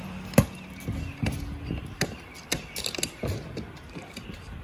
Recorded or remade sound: recorded